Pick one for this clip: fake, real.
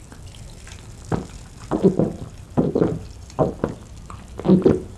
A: real